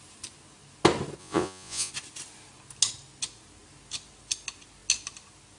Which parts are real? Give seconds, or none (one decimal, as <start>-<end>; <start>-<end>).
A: 0.0-1.2; 1.9-5.6